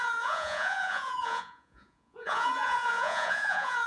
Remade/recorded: remade